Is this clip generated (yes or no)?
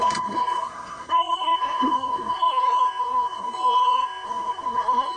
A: yes